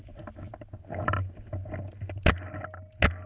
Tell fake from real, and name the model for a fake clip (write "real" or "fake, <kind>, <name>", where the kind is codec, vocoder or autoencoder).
real